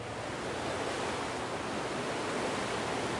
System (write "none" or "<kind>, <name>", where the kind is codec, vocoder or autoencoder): none